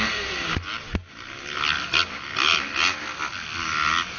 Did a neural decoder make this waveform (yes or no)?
no